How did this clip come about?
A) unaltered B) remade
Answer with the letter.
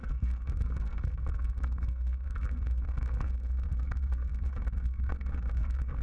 B